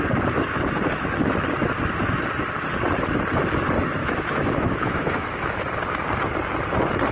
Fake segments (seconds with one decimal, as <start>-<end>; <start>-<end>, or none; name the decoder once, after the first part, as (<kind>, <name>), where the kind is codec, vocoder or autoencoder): 4.0-5.6 (autoencoder, DAC-VAE)